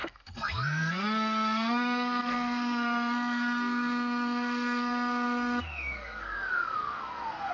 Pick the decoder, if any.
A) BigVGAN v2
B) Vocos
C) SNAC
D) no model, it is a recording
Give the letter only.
C